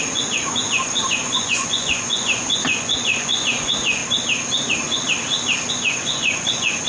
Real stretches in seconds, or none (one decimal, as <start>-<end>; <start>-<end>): 4.0-5.7